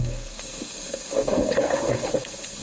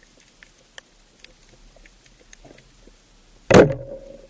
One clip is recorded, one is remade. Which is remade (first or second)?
first